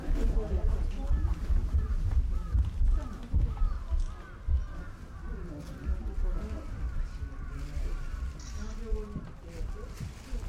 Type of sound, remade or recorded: recorded